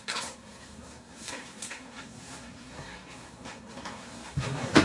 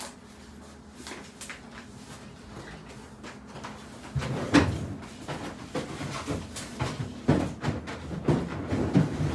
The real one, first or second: second